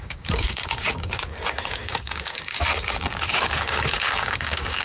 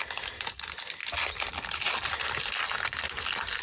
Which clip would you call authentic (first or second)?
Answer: second